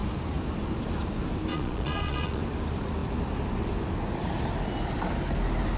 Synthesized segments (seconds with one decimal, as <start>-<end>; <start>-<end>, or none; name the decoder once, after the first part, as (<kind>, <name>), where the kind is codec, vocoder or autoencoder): 1.5-2.4 (vocoder, Vocos)